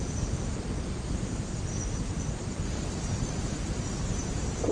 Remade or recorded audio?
recorded